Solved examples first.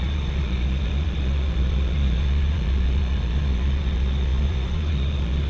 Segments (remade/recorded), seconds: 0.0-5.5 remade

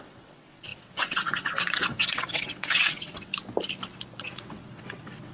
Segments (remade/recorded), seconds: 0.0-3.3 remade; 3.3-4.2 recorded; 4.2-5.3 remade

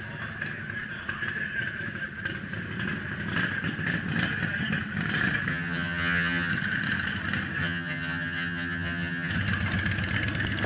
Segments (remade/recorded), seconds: 0.0-5.5 recorded; 5.5-6.5 remade; 6.5-7.6 recorded; 7.6-9.3 remade; 9.3-10.7 recorded

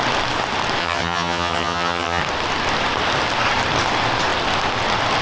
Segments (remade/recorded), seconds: 0.0-0.8 recorded; 0.8-2.2 remade; 2.2-5.2 recorded

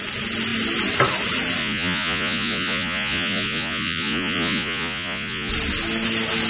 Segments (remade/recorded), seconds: 0.0-1.6 recorded; 1.6-5.5 remade; 5.5-6.5 recorded